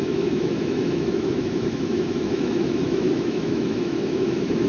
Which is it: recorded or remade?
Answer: remade